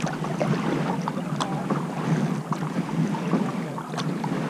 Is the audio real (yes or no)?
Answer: yes